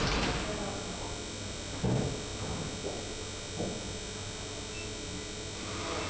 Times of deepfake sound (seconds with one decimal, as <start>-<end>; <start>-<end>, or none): none